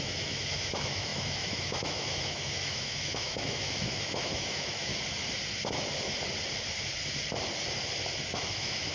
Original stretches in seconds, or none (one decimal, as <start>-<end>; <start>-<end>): 4.9-8.4